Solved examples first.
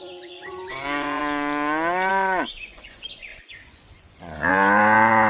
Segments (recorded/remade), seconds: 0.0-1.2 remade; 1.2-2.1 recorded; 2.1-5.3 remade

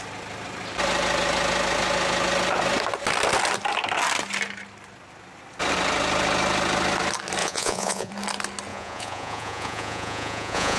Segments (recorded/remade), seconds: 0.0-7.4 recorded; 7.4-8.1 remade; 8.1-8.7 recorded; 8.7-10.8 remade

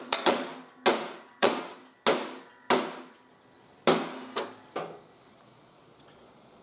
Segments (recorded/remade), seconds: 0.0-0.5 remade; 0.5-1.4 recorded; 1.4-1.8 remade; 1.8-5.3 recorded; 5.3-6.6 remade

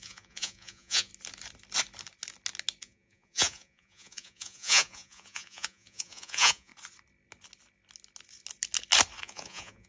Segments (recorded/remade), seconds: 0.0-1.1 remade; 1.1-2.8 recorded; 2.8-6.7 remade; 6.7-9.2 recorded; 9.2-9.9 remade

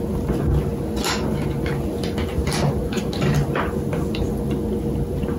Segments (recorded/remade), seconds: 0.0-5.4 recorded

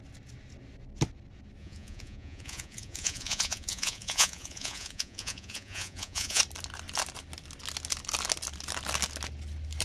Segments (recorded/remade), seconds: 0.0-1.6 recorded; 1.6-6.4 remade; 6.4-9.8 recorded